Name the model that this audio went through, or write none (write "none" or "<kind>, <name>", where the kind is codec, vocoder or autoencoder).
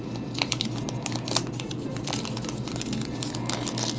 none